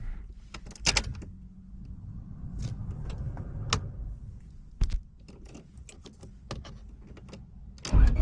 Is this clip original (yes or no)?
yes